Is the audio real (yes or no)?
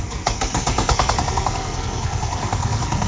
no